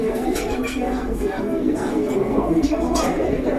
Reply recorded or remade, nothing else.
remade